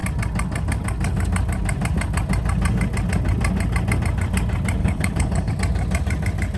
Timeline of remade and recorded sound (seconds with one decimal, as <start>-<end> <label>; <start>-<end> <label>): 0.0-4.8 recorded; 4.8-5.5 remade; 5.5-6.6 recorded